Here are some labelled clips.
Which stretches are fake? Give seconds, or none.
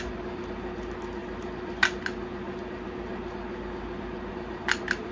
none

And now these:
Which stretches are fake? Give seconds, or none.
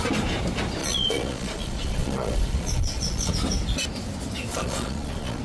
0.8-3.3; 4.5-5.4